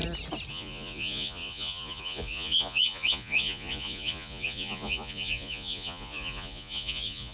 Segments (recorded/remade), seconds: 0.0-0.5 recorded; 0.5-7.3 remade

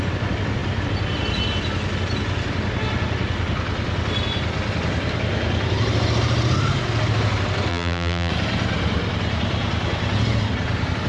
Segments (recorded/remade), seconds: 0.0-7.7 recorded; 7.7-8.3 remade; 8.3-11.1 recorded

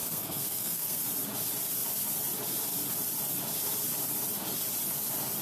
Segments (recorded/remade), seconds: 0.0-1.0 remade; 1.0-5.4 recorded

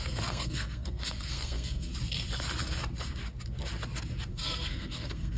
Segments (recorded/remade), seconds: 0.0-1.9 remade; 1.9-4.3 recorded; 4.3-5.4 remade

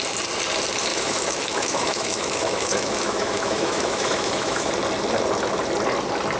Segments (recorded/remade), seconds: 0.0-0.9 recorded; 0.9-4.7 remade; 4.7-6.4 recorded